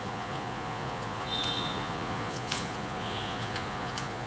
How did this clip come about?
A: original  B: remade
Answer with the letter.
B